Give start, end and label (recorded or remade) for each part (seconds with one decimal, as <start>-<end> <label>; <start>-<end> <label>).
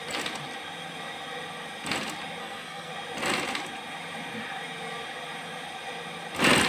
0.0-2.4 recorded; 2.4-2.9 remade; 2.9-6.7 recorded